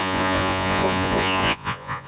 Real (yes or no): no